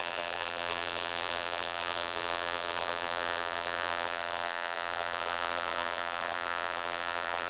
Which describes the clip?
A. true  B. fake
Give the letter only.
B